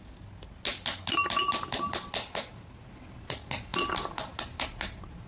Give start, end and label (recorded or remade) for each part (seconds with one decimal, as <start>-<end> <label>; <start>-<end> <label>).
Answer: 0.0-5.3 recorded